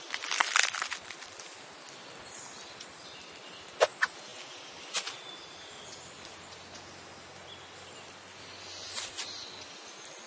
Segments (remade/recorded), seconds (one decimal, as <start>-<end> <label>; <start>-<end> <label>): 0.0-10.3 recorded